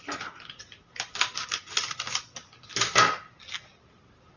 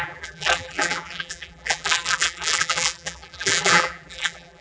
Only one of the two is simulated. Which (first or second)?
second